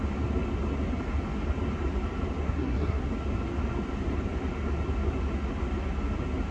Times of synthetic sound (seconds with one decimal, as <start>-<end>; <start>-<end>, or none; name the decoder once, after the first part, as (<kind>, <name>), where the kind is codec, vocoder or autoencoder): 2.4-3.1 (codec, SNAC)